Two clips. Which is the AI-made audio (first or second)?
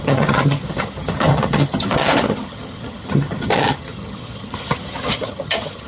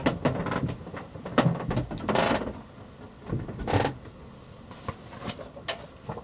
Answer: first